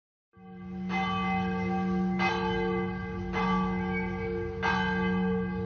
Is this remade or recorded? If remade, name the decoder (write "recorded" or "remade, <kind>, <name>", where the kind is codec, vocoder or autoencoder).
recorded